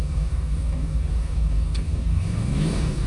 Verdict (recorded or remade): remade